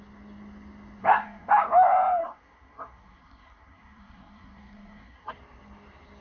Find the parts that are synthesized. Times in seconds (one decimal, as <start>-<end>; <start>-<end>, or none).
1.0-1.5; 2.2-5.3